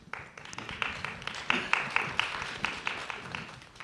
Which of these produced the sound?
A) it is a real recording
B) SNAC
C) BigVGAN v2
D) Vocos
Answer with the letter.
A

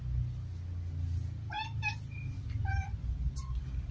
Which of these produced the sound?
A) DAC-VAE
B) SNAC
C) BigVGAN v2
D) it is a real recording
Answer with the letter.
D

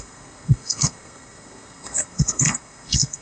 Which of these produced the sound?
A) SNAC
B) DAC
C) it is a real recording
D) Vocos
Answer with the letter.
A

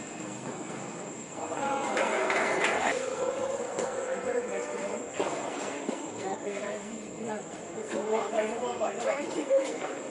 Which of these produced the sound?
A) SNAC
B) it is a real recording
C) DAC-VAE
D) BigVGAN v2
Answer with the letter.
A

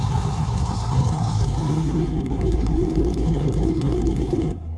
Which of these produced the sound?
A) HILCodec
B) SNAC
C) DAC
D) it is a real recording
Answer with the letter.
B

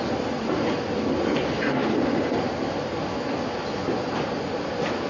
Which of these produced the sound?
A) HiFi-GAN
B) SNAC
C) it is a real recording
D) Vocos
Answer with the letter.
C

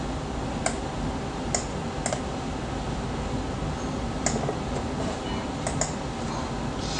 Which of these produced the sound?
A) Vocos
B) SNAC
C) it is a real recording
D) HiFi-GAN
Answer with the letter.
C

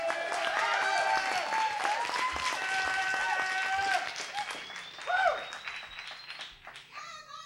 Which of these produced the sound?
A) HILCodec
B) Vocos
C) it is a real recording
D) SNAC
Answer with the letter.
C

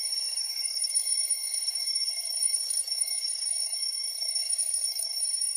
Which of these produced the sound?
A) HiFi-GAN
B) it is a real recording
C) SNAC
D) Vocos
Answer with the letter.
C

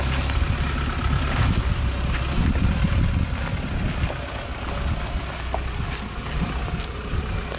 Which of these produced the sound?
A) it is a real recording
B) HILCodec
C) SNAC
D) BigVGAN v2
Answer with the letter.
A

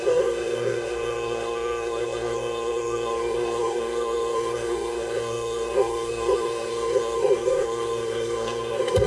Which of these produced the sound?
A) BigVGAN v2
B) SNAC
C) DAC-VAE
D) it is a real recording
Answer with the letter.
B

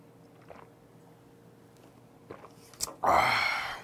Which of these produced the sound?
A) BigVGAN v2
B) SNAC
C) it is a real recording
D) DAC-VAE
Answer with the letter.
C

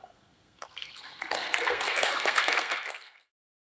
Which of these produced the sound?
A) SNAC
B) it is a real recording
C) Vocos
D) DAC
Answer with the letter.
A